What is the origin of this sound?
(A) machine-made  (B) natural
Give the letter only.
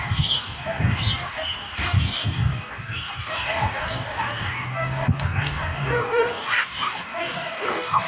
A